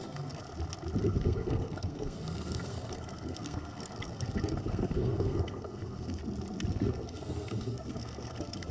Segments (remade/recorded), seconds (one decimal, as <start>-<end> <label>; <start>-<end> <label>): 0.0-0.4 remade; 0.4-1.0 recorded; 1.0-6.2 remade; 6.2-6.7 recorded; 6.7-8.7 remade